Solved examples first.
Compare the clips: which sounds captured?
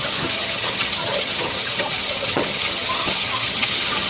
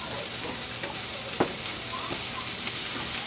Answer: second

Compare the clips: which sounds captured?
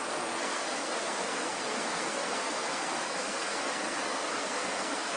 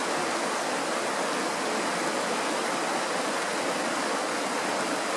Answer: second